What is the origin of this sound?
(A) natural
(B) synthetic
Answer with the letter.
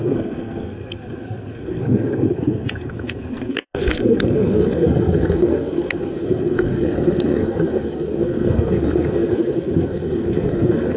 B